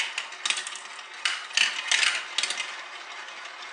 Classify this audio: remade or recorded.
recorded